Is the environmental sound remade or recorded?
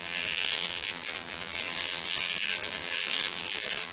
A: remade